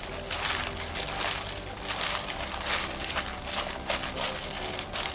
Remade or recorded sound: recorded